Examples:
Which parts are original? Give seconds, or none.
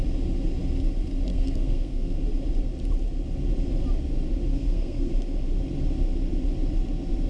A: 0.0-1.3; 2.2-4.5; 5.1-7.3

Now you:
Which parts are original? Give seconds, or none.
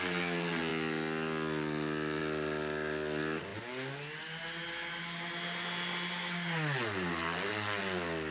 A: 0.0-8.3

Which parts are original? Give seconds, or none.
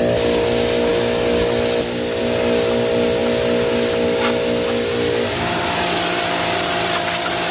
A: 0.0-7.5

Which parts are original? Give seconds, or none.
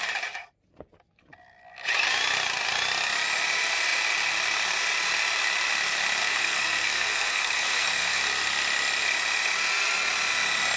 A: 0.0-6.2; 8.2-10.8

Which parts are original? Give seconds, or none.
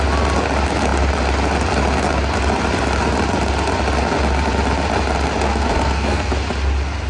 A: 0.0-5.5; 6.3-7.1